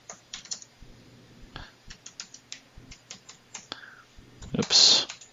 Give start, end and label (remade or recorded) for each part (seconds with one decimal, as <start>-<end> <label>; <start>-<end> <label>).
0.0-1.9 remade; 1.9-5.3 recorded